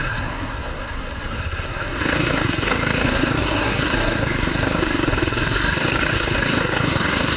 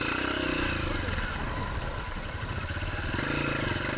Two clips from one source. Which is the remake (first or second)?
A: first